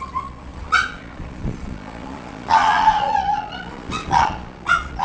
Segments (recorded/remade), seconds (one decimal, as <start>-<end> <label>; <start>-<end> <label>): 0.0-5.0 remade